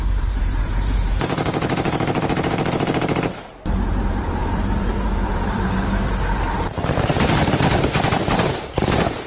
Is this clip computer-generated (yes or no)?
yes